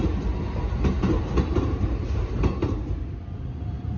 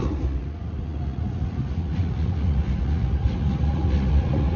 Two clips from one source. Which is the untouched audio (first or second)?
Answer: first